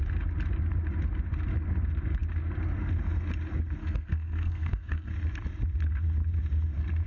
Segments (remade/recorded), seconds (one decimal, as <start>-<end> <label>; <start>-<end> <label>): 0.0-3.8 recorded; 3.8-5.1 remade; 5.1-7.1 recorded